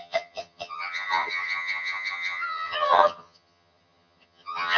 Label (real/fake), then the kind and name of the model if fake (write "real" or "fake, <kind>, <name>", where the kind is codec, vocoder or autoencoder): fake, vocoder, HiFi-GAN